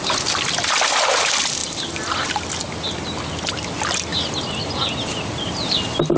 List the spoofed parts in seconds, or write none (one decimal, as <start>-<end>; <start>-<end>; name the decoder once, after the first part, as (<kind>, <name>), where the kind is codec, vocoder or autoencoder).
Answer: none